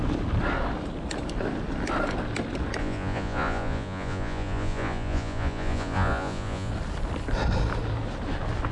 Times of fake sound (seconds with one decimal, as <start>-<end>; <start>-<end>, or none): 2.8-6.7